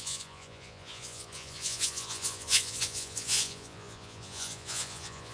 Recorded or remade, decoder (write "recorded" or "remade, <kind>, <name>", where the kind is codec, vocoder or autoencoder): remade, vocoder, Vocos